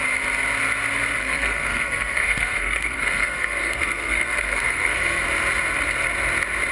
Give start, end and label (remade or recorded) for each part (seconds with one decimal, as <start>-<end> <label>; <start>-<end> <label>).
0.0-1.2 recorded; 1.2-5.2 remade; 5.2-6.7 recorded